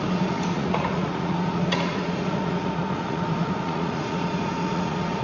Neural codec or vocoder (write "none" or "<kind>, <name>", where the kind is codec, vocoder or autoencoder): vocoder, Vocos